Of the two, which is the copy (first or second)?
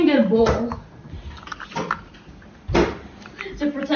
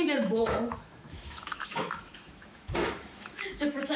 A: second